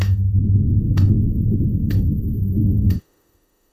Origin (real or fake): fake